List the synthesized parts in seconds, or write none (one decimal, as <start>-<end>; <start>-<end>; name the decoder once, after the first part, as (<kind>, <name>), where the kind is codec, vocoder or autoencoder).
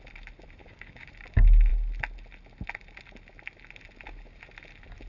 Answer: 0.6-1.1 (codec, DAC)